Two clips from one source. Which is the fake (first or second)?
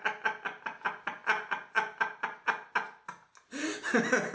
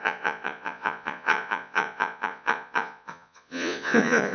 second